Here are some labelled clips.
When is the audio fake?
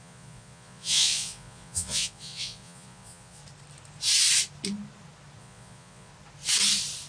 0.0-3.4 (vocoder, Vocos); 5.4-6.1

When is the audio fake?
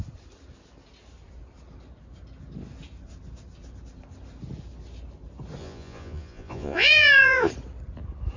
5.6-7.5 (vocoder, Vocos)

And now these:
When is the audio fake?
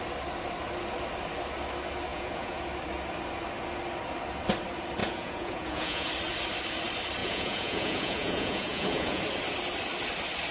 2.1-2.6 (vocoder, Vocos); 5.0-6.1; 7.2-9.2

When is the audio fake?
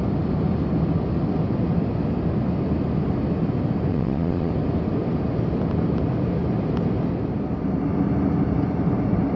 3.9-4.5 (vocoder, Vocos)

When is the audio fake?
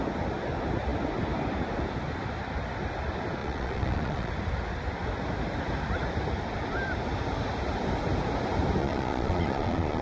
3.4-4.3 (vocoder, Vocos); 8.8-10.0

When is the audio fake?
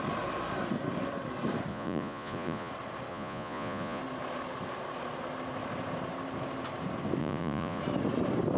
1.7-2.7 (vocoder, Vocos); 3.1-4.0; 7.2-7.8